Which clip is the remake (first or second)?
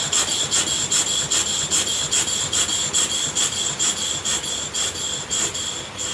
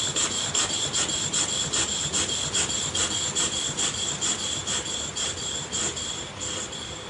second